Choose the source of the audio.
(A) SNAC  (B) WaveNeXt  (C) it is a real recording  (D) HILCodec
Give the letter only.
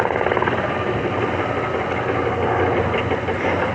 C